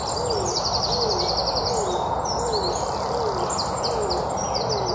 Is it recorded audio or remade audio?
recorded